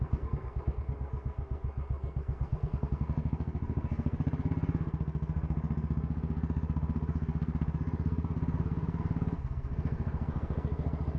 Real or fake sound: fake